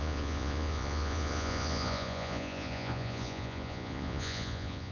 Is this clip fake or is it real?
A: fake